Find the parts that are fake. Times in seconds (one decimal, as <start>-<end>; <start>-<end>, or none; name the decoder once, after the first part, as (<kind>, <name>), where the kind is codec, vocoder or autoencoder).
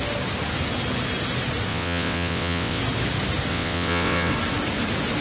1.7-2.8 (vocoder, WaveNeXt); 3.5-4.3